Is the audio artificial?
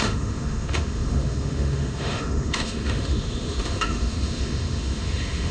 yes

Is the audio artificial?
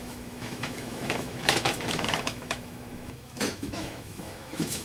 yes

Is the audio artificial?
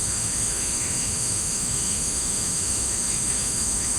yes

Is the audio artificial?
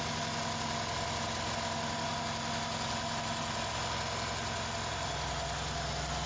no